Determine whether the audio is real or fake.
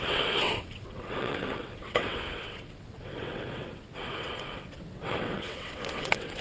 fake